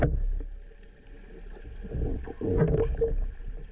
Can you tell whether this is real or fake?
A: real